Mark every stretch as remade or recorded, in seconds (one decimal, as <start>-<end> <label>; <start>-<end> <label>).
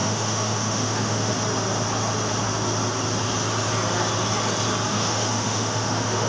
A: 0.0-1.3 remade; 1.3-4.9 recorded; 4.9-6.3 remade